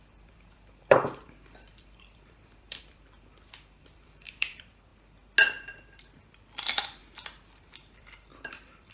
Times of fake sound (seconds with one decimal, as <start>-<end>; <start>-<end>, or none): 0.0-4.9; 6.6-7.0; 8.0-8.9